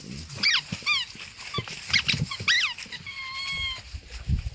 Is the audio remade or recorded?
recorded